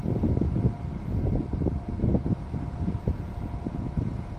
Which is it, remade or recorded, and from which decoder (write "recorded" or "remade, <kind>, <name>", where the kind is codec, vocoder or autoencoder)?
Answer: recorded